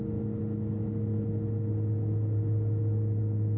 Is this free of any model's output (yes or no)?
yes